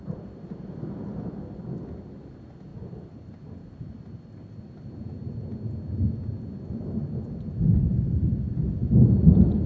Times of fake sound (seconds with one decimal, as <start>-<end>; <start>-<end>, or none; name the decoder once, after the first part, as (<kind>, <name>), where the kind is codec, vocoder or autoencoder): none